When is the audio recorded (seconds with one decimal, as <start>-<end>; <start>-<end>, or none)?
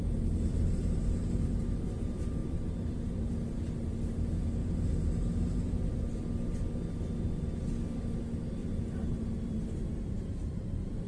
1.6-2.4; 3.3-4.6; 5.8-8.6